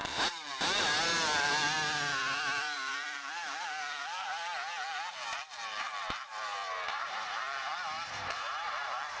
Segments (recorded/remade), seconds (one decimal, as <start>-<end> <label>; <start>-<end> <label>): 0.0-9.2 remade